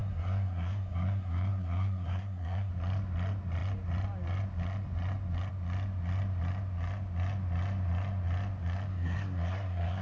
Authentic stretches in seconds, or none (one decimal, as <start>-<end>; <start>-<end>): 2.7-8.9